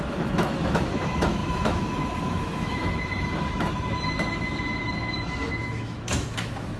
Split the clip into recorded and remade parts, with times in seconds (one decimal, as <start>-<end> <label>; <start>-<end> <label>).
0.0-6.8 remade